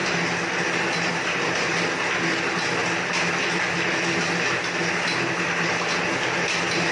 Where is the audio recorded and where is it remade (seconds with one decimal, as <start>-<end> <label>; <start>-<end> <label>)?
0.0-6.9 recorded